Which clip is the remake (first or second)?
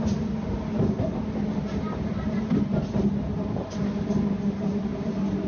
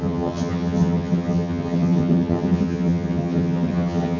second